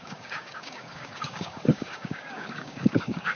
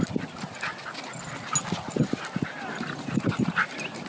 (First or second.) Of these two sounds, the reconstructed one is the first